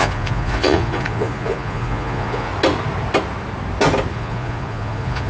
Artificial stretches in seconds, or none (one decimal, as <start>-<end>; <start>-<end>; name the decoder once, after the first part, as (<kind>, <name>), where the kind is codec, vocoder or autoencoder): 0.0-2.5 (vocoder, Vocos); 4.1-5.3